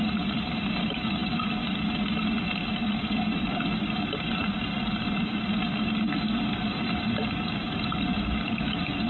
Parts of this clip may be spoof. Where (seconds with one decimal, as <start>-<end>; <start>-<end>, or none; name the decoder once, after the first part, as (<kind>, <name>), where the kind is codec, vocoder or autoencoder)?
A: none